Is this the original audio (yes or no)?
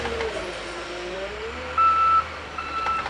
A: no